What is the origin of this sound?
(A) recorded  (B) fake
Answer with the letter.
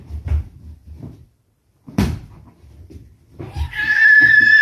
B